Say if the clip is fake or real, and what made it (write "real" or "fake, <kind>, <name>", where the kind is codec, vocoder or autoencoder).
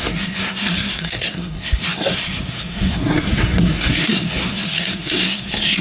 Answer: fake, codec, SNAC